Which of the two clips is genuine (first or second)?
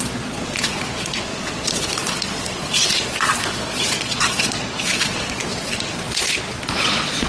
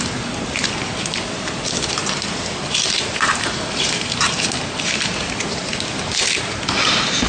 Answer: second